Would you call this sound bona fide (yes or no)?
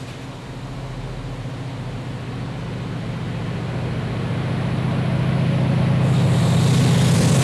yes